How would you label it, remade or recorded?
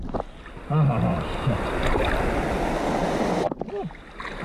recorded